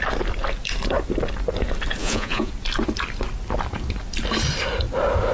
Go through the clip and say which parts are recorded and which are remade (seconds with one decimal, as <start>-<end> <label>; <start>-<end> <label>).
0.0-2.0 recorded; 2.0-2.5 remade; 2.5-5.3 recorded